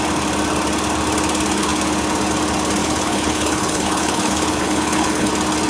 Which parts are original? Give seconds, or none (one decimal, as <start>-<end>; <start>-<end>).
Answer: 0.0-2.8; 5.3-5.7